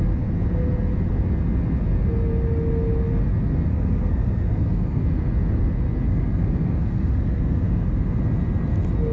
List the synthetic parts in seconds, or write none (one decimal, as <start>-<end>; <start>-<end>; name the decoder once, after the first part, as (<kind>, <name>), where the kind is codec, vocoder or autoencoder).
3.7-5.0 (codec, SNAC); 6.1-8.2